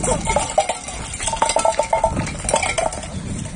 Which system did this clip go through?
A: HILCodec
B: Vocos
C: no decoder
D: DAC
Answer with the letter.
C